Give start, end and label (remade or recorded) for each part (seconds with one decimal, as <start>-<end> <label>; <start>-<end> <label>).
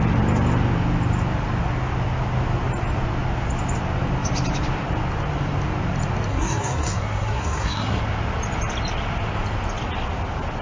0.0-6.3 recorded; 6.3-8.0 remade; 8.0-10.6 recorded